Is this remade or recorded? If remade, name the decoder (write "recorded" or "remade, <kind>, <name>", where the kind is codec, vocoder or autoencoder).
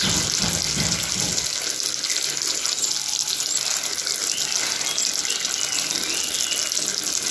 recorded